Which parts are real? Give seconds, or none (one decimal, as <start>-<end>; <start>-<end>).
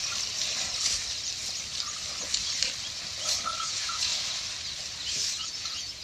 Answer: 0.0-3.6; 4.1-5.4